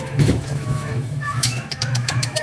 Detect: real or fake fake